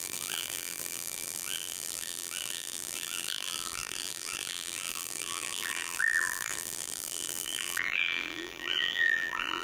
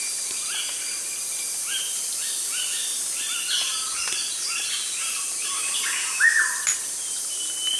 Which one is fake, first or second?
first